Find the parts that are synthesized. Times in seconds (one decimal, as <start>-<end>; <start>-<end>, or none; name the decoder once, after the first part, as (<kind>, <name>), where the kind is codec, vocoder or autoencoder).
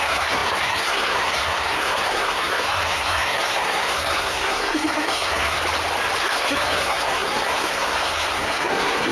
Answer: 0.0-5.6 (codec, SNAC); 6.2-9.1